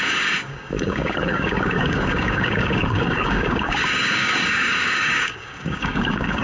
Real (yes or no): no